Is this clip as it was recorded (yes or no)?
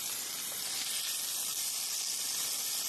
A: yes